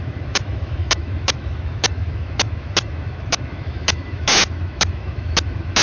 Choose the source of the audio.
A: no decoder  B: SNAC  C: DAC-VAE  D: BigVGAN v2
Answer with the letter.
C